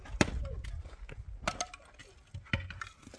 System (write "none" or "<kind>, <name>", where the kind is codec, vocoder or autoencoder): none